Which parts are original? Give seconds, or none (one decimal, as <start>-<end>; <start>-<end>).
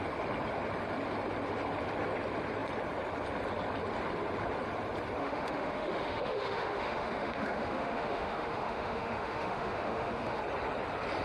0.0-5.2; 10.4-11.2